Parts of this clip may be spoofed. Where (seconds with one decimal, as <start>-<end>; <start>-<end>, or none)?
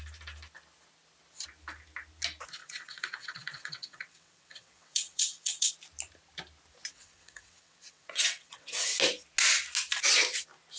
2.6-5.7; 6.9-9.0